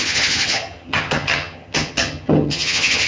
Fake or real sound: fake